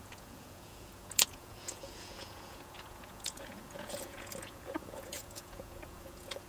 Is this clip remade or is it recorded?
remade